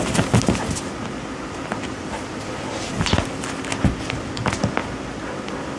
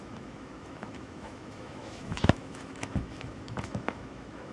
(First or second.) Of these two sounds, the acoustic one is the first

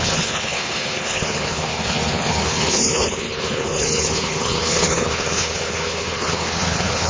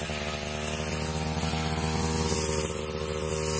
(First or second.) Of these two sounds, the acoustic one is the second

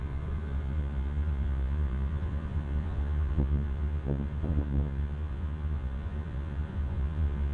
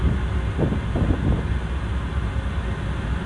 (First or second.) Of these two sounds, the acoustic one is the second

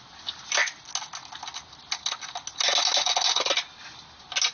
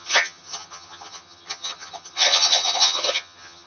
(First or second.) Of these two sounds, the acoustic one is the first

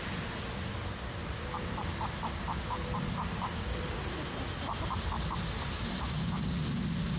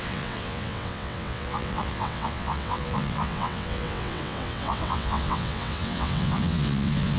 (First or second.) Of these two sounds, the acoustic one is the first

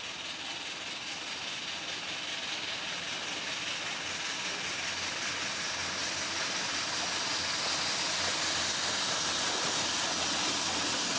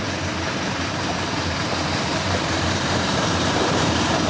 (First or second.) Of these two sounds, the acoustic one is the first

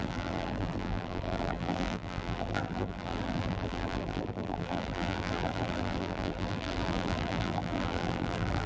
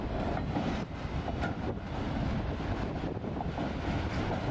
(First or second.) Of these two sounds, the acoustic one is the second